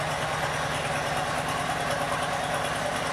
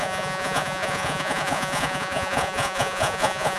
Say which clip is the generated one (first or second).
second